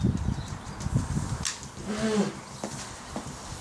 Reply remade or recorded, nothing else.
recorded